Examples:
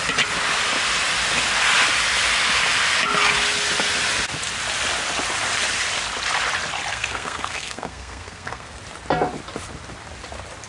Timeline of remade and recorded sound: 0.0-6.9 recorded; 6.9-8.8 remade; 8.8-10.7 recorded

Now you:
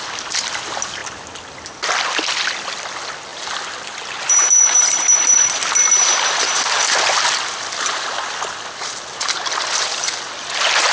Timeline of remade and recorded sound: 0.0-3.3 recorded; 3.3-5.4 remade; 5.4-10.9 recorded

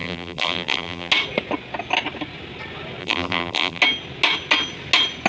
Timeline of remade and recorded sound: 0.0-1.1 remade; 1.1-3.0 recorded; 3.0-3.8 remade; 3.8-5.3 recorded

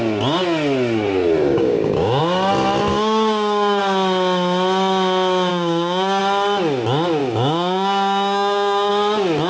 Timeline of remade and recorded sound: 0.0-1.5 recorded; 1.5-2.2 remade; 2.2-2.9 recorded; 2.9-3.8 remade; 3.8-5.5 recorded; 5.5-6.2 remade; 6.2-7.2 recorded; 7.2-8.9 remade; 8.9-9.5 recorded